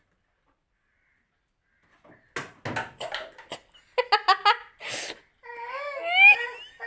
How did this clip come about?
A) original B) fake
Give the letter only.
A